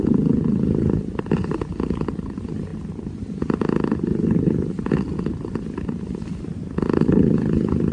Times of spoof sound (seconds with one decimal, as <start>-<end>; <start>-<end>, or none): none